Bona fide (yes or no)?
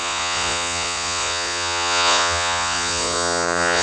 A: no